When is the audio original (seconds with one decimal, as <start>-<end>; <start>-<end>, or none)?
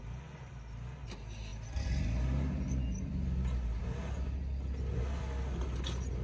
0.0-6.2